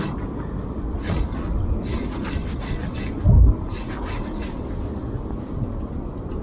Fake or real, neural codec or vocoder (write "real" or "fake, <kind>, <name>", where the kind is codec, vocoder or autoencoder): real